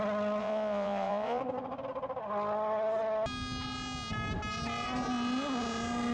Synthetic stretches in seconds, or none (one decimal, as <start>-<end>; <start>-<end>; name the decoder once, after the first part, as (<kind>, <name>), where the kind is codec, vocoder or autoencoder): 0.4-1.4 (vocoder, Vocos)